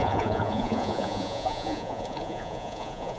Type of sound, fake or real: fake